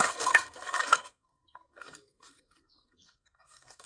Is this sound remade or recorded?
remade